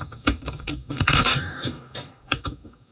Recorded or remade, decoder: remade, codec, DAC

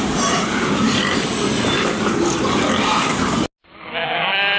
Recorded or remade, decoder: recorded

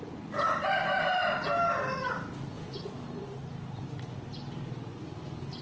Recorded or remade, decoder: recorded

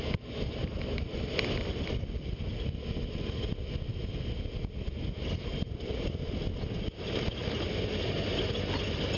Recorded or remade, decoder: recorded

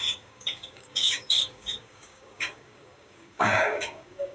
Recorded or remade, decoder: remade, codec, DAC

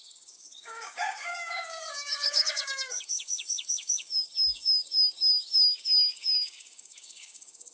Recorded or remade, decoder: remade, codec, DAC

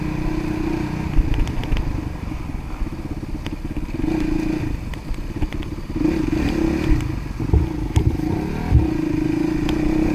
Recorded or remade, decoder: recorded